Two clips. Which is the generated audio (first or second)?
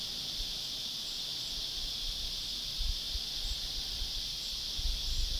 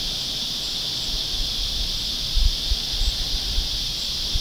second